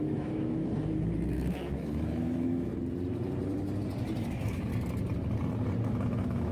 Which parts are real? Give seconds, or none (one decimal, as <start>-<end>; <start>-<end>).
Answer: 0.7-1.3; 2.7-4.3; 4.7-5.9

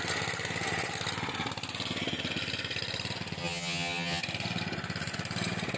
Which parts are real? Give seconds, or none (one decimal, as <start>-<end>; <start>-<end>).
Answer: 0.0-3.4; 4.2-5.8

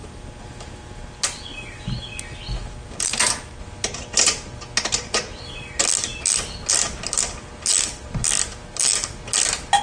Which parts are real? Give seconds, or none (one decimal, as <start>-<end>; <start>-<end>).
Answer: 0.0-9.8

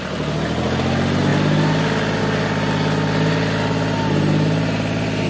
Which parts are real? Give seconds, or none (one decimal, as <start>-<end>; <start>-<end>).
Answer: 0.0-5.3

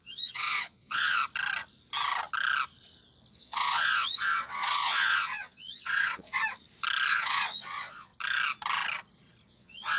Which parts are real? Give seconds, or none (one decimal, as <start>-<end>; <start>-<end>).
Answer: 1.2-3.4; 6.4-7.1; 8.1-9.5

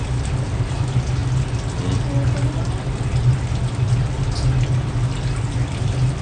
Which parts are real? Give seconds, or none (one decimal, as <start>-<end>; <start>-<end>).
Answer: 0.0-6.2

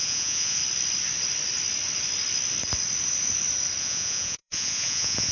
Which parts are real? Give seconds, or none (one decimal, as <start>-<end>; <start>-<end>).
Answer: 0.6-3.8

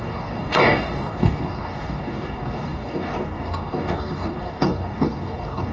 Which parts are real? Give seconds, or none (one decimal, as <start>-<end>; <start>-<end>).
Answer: none